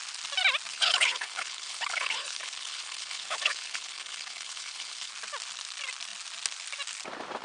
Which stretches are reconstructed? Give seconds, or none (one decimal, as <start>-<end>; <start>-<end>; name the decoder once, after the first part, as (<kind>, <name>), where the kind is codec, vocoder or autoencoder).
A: 0.7-5.1 (codec, HILCodec)

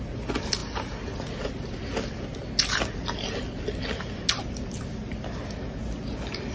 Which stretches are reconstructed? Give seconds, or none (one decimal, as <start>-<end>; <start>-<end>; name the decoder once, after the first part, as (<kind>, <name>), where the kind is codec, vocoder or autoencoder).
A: none

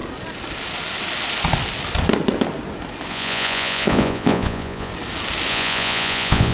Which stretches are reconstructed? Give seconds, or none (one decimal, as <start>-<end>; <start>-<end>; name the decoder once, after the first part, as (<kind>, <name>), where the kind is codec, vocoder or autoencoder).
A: 3.1-4.9 (vocoder, Vocos); 5.5-6.5

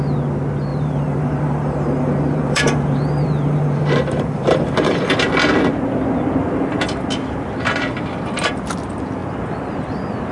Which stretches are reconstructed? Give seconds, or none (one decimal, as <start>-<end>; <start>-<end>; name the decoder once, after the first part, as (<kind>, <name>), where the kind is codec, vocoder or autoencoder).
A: 0.7-5.1 (vocoder, BigVGAN v2)